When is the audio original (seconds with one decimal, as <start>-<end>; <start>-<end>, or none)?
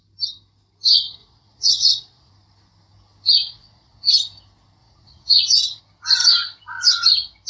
0.0-1.2; 2.3-3.4; 4.2-4.8; 5.8-7.5